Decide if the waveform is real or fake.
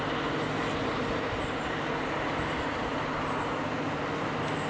real